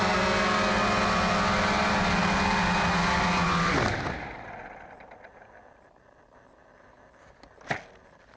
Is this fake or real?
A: real